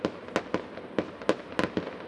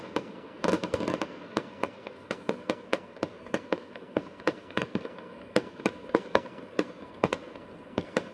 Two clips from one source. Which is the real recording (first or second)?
first